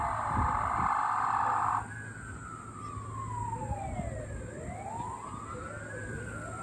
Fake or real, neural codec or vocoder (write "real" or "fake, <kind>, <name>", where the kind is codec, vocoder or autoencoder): real